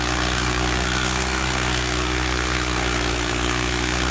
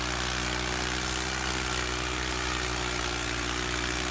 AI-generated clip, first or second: first